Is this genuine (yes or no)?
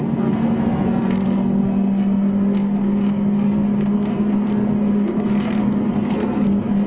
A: no